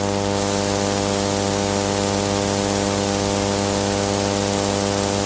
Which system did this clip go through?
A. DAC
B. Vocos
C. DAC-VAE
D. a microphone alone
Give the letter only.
D